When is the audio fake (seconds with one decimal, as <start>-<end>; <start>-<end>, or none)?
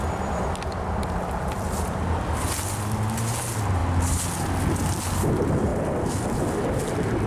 none